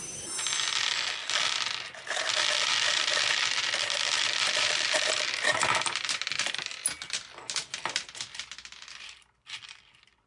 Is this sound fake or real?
real